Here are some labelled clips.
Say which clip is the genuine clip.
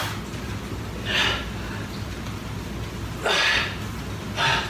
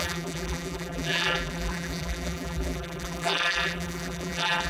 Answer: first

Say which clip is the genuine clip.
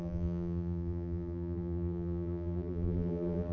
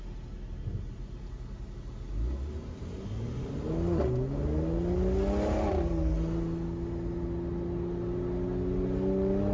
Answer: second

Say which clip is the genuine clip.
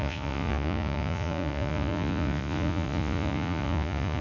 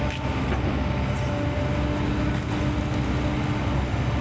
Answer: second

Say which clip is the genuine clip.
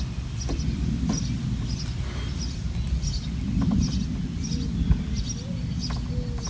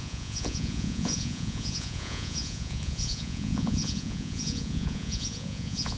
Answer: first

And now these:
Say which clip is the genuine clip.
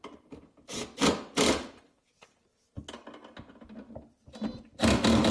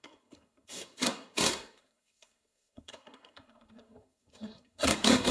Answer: first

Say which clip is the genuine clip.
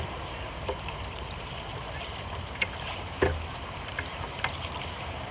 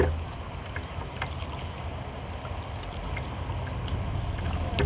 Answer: second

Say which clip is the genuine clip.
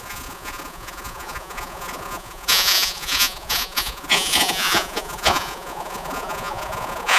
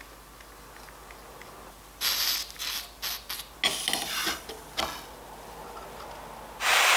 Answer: second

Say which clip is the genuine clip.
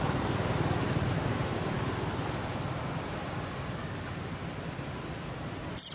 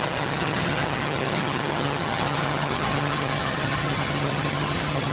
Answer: first